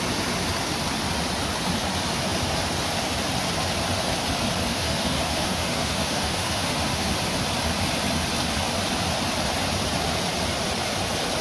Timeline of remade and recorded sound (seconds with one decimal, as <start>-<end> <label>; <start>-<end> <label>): 0.0-4.7 recorded; 4.7-7.1 remade; 7.1-11.4 recorded